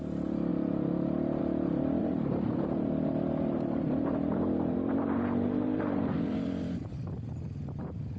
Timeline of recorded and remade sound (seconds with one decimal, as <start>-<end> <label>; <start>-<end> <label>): 0.0-2.0 recorded; 2.0-6.9 remade; 6.9-8.2 recorded